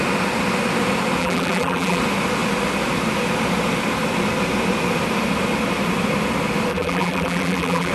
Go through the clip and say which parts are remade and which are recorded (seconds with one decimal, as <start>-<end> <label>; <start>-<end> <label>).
0.0-1.2 recorded; 1.2-2.0 remade; 2.0-6.7 recorded; 6.7-7.9 remade